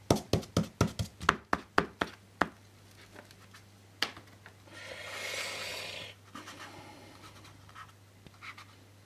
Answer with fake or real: real